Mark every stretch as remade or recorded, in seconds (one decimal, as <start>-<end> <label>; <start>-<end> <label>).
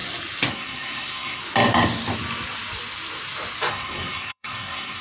0.0-0.5 recorded; 0.5-1.4 remade; 1.4-3.7 recorded; 3.7-5.0 remade